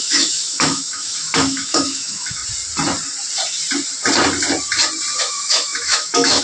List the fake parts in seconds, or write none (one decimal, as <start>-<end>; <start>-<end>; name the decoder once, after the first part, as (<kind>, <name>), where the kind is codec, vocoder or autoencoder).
0.0-2.4 (autoencoder, DAC-VAE); 5.2-6.4